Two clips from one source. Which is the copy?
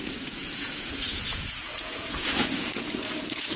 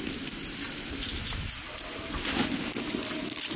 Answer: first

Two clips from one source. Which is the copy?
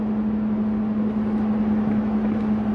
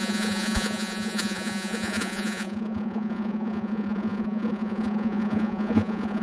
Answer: second